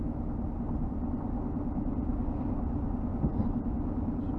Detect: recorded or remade recorded